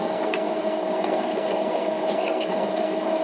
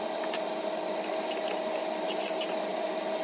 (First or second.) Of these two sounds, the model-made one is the first